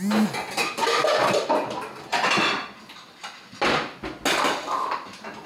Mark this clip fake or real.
real